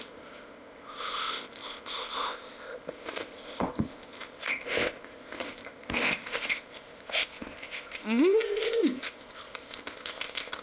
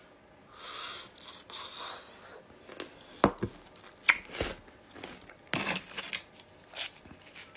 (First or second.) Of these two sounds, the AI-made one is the first